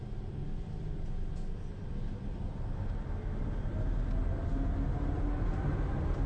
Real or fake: real